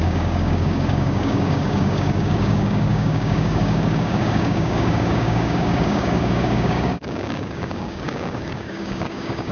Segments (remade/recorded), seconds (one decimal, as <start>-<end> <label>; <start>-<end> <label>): 0.0-9.5 remade